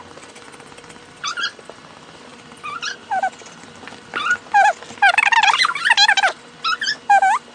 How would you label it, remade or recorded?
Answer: recorded